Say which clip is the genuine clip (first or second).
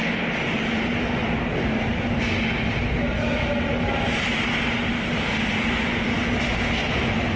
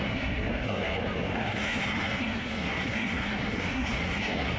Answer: first